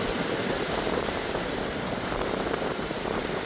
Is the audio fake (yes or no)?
no